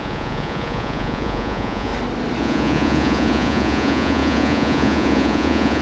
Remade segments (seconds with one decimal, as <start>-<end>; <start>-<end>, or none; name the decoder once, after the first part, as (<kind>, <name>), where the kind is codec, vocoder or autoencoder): 0.0-1.9 (vocoder, Vocos); 2.4-5.8